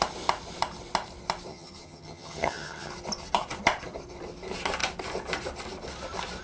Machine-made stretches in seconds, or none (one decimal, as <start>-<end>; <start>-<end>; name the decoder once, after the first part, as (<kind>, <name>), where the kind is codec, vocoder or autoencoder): 1.5-2.9 (vocoder, HiFi-GAN)